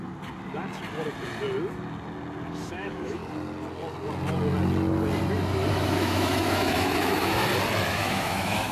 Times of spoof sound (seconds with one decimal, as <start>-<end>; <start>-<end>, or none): 2.7-3.2; 5.7-7.4; 7.9-8.7